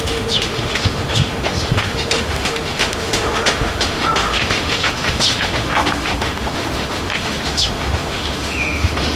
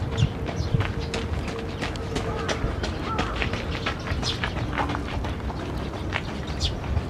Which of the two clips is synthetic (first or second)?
first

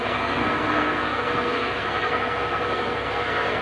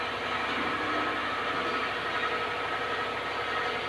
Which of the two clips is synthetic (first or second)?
first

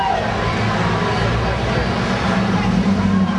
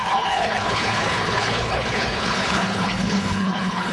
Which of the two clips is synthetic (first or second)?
second